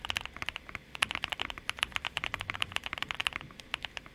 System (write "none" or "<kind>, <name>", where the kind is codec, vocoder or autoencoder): vocoder, BigVGAN v2